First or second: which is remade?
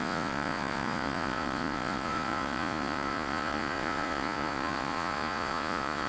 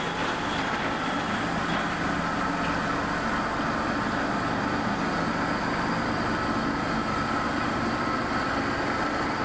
first